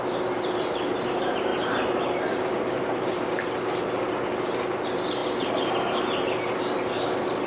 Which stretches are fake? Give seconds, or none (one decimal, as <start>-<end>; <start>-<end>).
none